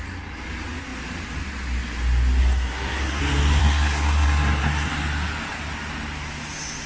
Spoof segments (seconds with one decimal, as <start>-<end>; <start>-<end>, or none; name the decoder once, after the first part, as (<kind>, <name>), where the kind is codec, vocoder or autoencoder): 2.4-3.2 (codec, SNAC); 3.6-4.9

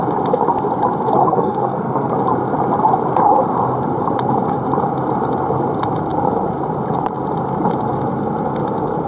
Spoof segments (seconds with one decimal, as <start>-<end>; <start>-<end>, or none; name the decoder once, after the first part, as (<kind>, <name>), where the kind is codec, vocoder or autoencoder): 1.2-2.1 (codec, SNAC)

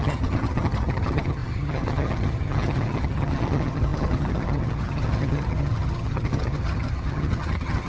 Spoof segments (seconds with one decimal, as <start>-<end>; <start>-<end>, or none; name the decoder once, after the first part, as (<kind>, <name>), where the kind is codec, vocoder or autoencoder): 0.0-7.9 (vocoder, HiFi-GAN)

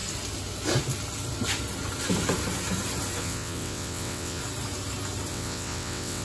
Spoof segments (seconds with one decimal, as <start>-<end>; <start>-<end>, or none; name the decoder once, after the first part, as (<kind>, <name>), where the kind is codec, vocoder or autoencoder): 3.2-4.4 (vocoder, WaveNeXt); 5.3-6.2

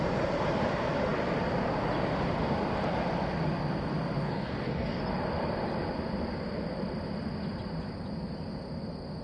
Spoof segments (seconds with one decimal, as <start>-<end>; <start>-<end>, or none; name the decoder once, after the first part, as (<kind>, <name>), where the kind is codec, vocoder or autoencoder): 4.2-5.0 (codec, DAC)

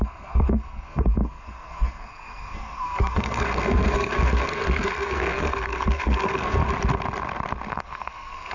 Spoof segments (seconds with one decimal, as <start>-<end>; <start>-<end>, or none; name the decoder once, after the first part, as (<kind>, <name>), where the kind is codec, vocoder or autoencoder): 0.0-6.6 (codec, SNAC); 7.7-8.5